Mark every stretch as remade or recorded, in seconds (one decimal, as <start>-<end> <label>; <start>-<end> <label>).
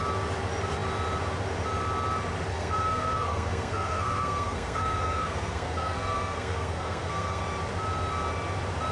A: 0.0-2.5 recorded; 2.5-7.4 remade; 7.4-8.9 recorded